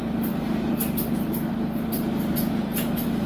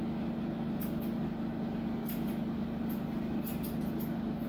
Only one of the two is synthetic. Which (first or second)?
first